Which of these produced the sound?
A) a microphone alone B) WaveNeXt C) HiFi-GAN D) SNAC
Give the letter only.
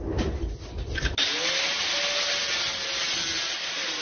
A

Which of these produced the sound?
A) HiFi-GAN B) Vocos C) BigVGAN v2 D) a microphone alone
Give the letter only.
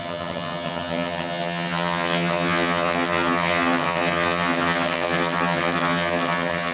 A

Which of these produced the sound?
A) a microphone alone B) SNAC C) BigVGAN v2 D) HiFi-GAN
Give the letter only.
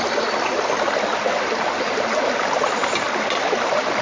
A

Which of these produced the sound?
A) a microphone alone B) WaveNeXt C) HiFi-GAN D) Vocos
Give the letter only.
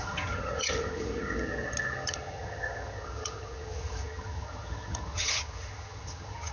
C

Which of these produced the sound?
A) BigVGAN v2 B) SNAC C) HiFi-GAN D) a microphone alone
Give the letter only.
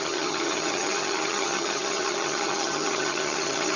C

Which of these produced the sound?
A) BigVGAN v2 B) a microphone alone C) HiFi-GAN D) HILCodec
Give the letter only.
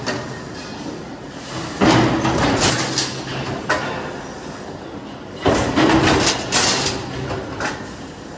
B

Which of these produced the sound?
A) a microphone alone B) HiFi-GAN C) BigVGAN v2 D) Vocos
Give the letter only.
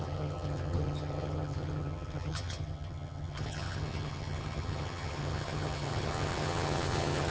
B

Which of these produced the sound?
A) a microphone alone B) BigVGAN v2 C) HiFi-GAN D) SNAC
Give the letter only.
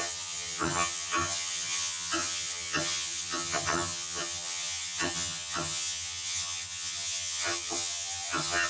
C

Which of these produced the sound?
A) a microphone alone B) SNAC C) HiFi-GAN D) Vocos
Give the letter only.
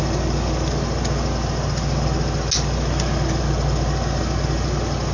A